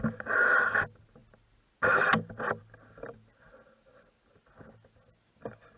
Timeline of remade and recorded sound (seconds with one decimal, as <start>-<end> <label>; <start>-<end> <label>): 0.0-5.8 recorded